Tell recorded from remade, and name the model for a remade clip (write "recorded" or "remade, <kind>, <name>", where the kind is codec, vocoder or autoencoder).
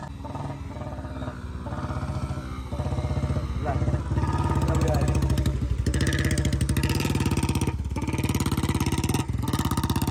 recorded